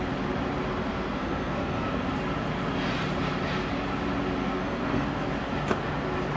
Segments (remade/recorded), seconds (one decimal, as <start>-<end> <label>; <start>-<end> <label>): 0.0-0.9 recorded; 0.9-2.0 remade; 2.0-4.4 recorded; 4.4-5.3 remade; 5.3-6.4 recorded